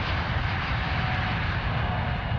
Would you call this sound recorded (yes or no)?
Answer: yes